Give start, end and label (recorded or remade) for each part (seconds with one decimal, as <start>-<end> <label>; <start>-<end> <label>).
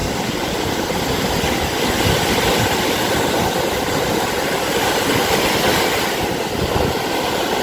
0.0-0.9 remade; 0.9-7.6 recorded